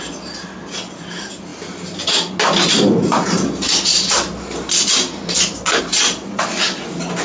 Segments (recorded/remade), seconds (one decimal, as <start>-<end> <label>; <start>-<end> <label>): 0.0-7.2 recorded